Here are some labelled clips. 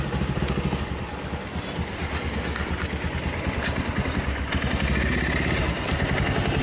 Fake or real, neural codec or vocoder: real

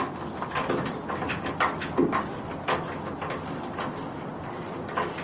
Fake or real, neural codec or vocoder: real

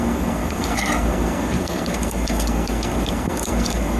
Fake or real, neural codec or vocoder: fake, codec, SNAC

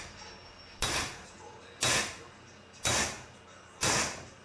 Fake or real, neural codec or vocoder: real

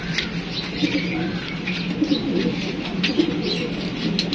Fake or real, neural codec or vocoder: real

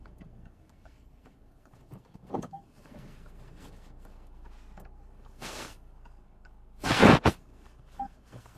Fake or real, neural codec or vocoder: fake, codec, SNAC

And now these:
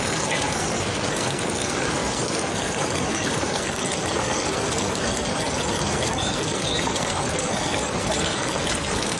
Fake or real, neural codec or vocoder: fake, codec, SNAC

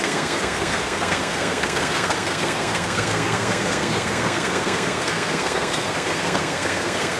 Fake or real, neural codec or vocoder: fake, codec, SNAC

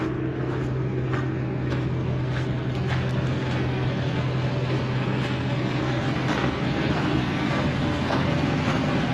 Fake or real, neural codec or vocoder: fake, codec, SNAC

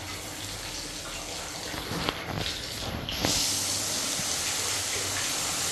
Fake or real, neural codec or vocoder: real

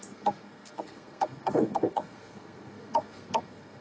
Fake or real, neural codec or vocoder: fake, codec, SNAC